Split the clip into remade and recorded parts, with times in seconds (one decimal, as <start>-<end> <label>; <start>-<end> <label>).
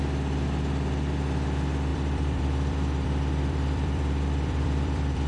0.0-1.9 recorded; 1.9-5.3 remade